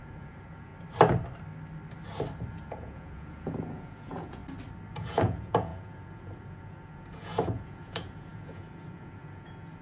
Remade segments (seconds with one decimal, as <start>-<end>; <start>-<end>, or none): 0.0-0.7; 2.5-4.4; 4.9-9.8

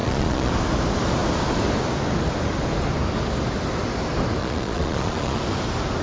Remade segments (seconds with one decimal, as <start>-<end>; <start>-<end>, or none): 0.0-0.5; 4.4-5.4

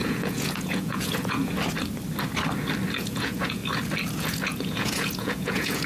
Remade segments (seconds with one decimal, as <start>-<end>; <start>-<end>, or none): 0.0-1.4; 3.0-3.6; 4.2-5.9